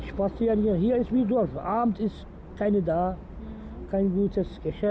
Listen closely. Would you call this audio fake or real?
real